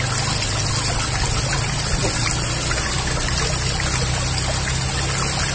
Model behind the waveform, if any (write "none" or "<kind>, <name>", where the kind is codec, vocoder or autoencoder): none